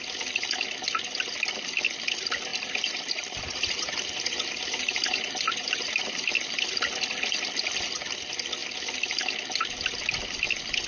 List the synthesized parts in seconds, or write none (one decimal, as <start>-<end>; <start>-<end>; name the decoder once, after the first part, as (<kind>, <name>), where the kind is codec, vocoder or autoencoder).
2.5-6.0 (vocoder, BigVGAN v2)